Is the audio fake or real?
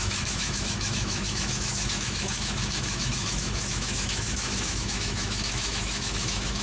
fake